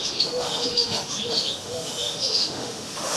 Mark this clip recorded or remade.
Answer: remade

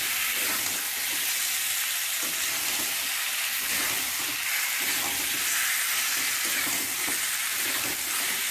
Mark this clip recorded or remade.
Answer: recorded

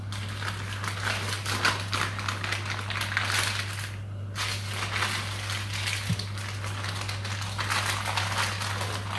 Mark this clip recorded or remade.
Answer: recorded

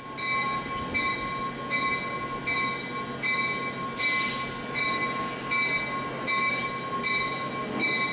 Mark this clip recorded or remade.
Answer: recorded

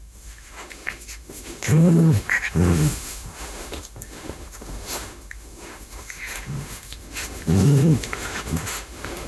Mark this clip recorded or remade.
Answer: remade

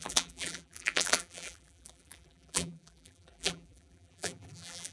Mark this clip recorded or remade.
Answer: remade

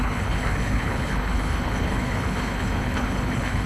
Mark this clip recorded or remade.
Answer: remade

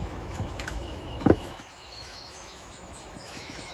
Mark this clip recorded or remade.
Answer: remade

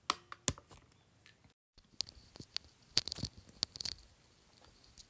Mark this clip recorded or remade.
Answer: recorded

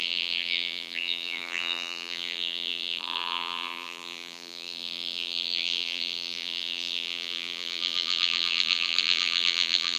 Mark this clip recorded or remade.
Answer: remade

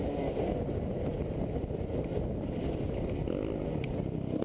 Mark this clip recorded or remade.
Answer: recorded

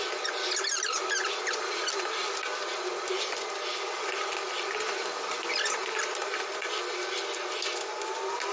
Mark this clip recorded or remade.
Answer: recorded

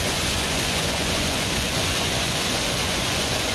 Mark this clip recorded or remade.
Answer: remade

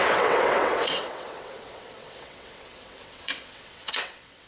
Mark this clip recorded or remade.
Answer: remade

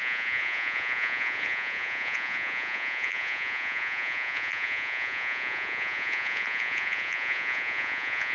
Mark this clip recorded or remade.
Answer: remade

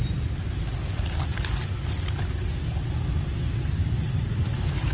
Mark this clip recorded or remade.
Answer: recorded